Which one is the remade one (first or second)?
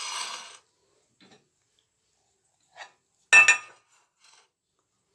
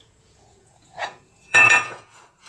second